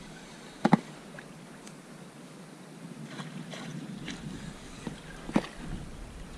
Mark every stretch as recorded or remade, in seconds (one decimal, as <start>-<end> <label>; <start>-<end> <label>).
0.0-6.4 recorded